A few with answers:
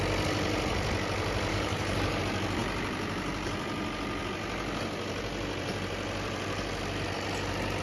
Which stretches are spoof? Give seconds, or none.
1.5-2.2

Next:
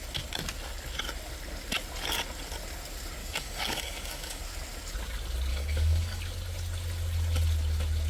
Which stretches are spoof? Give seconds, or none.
3.2-4.4; 5.5-6.2

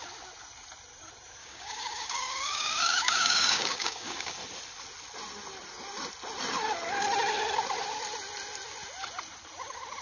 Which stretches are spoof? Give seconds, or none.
1.4-4.3

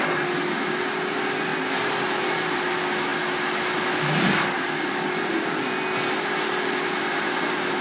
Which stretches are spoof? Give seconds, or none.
none